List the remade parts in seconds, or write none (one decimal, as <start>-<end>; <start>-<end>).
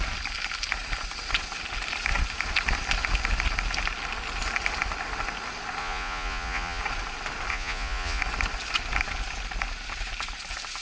5.8-6.8; 7.5-8.2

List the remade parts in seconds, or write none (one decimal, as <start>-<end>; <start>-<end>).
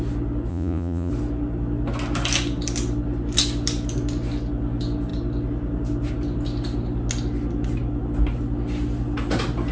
0.5-1.1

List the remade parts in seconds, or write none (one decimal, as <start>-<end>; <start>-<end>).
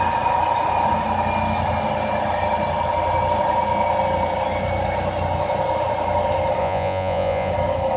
6.6-7.5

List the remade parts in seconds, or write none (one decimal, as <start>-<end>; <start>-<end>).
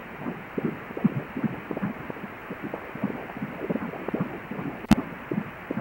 0.0-0.5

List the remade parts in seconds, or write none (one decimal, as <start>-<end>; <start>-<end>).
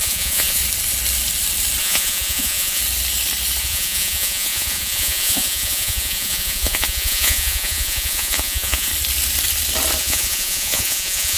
0.0-0.6; 1.8-2.8; 3.6-8.9; 10.0-11.4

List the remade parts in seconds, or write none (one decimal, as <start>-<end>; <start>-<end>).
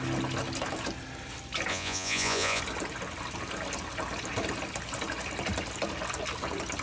1.7-2.6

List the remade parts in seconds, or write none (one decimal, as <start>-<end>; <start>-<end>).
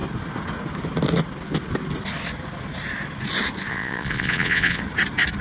3.7-4.8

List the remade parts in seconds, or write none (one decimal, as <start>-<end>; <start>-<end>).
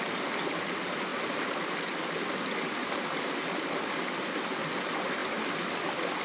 none